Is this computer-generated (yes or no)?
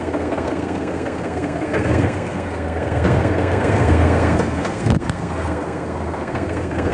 yes